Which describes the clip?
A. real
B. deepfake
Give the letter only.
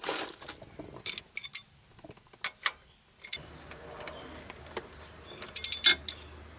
A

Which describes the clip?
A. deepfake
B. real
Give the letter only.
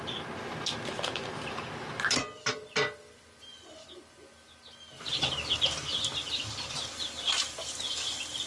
B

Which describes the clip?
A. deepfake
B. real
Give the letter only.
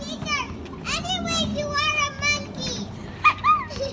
B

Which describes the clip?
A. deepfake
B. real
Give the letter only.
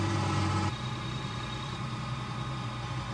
A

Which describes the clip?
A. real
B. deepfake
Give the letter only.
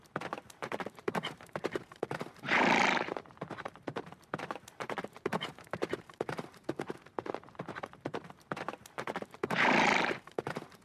B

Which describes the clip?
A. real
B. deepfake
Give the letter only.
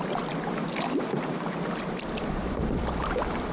B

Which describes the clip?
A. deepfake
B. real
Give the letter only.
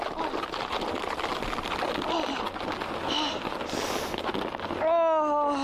B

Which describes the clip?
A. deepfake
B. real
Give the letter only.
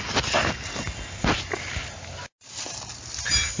B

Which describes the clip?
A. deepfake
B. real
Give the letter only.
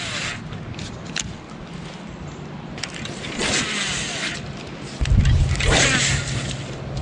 B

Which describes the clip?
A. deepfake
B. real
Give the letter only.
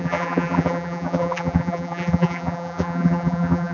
A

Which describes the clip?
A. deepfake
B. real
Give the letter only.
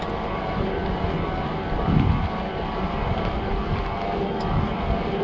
B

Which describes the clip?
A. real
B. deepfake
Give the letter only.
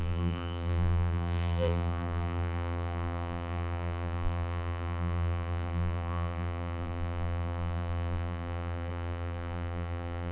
B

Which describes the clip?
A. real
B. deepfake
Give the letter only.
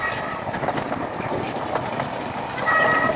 A